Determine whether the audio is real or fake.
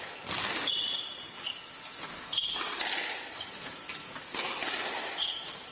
real